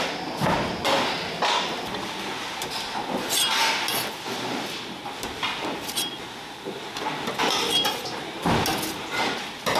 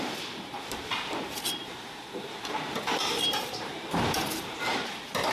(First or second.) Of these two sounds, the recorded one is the first